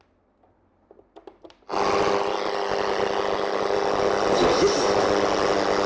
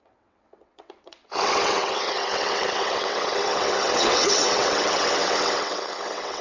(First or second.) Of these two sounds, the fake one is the second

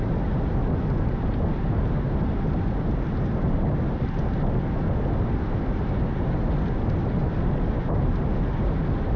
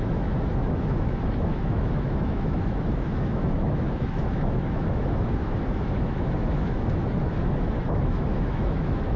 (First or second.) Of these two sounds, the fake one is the second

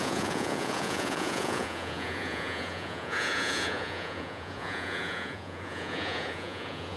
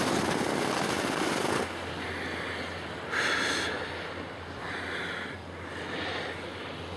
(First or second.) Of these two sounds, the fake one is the first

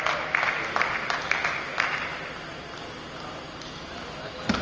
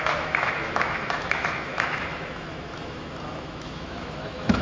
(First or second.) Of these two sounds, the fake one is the second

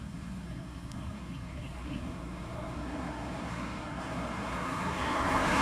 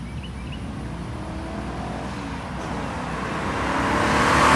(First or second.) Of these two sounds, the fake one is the first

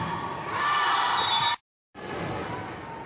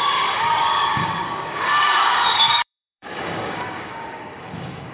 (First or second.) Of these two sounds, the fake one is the second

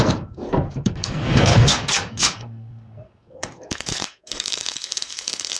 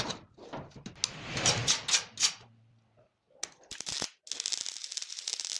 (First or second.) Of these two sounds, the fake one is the first